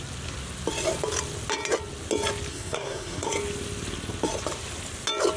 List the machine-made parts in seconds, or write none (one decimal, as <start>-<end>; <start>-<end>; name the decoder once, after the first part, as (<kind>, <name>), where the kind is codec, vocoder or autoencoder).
2.5-3.3 (codec, SNAC)